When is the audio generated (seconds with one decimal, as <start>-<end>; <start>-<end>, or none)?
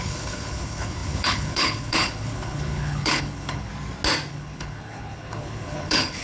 0.0-3.7; 4.3-6.2